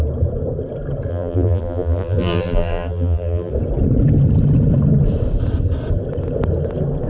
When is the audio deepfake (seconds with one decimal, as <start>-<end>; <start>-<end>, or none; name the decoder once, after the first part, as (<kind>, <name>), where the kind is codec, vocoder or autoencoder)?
1.1-3.5 (vocoder, BigVGAN v2)